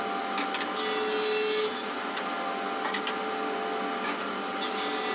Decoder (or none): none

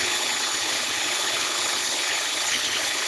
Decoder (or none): codec, HILCodec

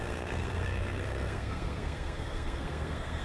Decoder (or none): codec, SNAC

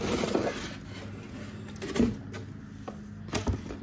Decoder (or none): none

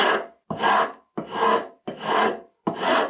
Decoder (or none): none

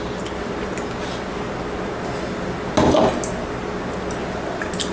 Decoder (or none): none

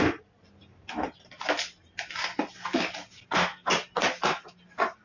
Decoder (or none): none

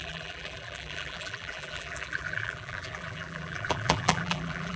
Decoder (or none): vocoder, BigVGAN v2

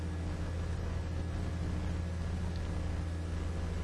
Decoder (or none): none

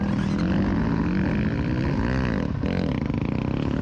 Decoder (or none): none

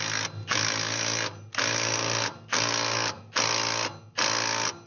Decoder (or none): none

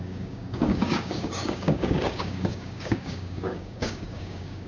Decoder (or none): codec, DAC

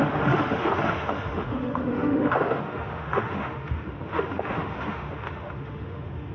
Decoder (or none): autoencoder, DAC-VAE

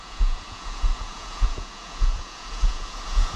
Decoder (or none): vocoder, Vocos